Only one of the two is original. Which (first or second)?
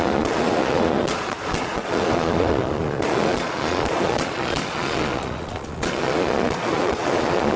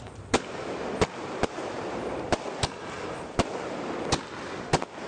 second